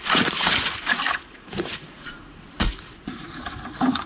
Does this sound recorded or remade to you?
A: remade